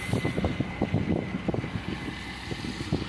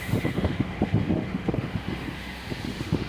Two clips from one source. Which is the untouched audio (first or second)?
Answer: first